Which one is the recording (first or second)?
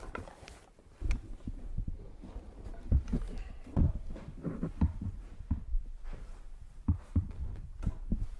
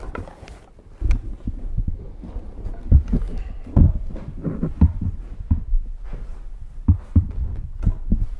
second